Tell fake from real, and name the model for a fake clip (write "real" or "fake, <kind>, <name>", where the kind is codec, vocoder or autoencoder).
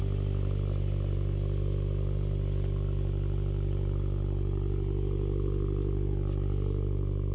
real